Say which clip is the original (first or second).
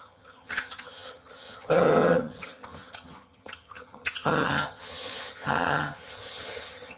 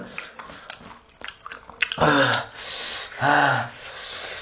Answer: second